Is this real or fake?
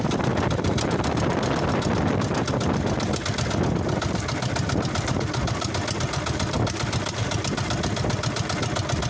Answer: real